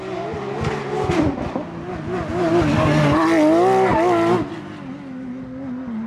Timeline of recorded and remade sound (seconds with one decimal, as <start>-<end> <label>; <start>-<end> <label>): 0.0-6.1 recorded